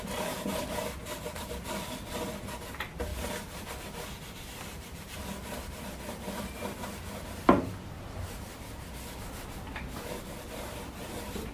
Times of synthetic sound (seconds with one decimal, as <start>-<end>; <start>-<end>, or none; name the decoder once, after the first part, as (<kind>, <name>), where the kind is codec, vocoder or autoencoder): none

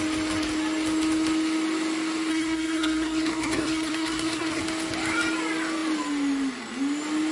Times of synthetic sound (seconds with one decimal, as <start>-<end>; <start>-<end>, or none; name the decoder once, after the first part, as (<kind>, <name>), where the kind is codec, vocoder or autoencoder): 2.3-4.6 (codec, SNAC)